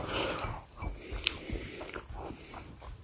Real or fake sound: real